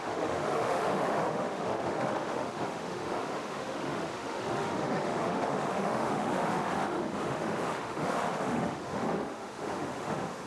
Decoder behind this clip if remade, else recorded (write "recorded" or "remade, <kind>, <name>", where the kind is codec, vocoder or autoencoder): remade, autoencoder, DAC-VAE